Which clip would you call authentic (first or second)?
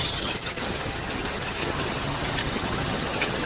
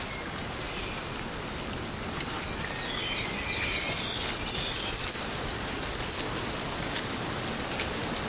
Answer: second